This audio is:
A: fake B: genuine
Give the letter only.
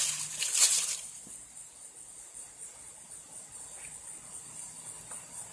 B